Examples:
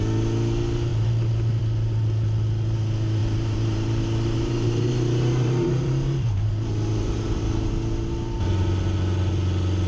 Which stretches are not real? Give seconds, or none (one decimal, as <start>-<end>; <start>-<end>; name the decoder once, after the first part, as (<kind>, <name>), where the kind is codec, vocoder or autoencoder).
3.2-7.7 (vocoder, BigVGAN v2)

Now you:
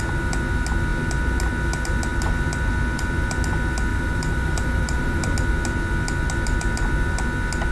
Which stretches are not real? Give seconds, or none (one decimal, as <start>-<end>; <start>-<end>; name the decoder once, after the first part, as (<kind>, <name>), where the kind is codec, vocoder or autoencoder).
3.9-5.2 (vocoder, BigVGAN v2)

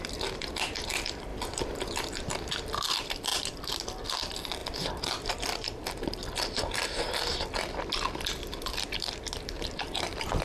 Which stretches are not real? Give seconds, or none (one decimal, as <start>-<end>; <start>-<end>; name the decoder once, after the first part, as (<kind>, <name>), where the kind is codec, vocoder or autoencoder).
0.0-3.3 (vocoder, BigVGAN v2); 4.1-6.2; 9.5-10.4